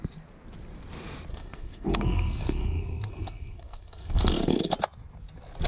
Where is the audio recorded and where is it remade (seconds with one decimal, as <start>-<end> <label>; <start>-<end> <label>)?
0.0-1.3 recorded; 1.3-4.7 remade; 4.7-5.7 recorded